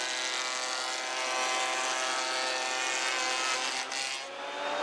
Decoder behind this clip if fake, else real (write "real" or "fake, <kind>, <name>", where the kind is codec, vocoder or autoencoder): real